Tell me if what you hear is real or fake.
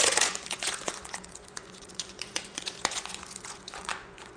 fake